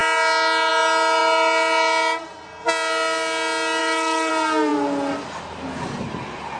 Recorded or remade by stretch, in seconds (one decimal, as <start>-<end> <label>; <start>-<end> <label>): 0.0-3.8 recorded; 3.8-4.3 remade; 4.3-6.6 recorded